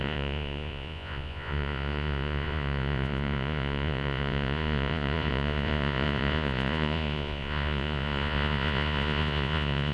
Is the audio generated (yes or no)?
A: yes